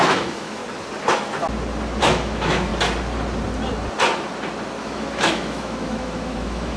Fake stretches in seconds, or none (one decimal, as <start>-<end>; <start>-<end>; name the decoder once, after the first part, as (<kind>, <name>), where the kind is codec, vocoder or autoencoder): 0.0-0.6 (autoencoder, DAC-VAE); 2.0-2.7; 4.8-6.8